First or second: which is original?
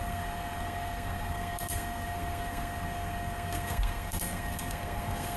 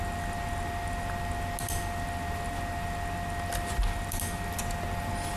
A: second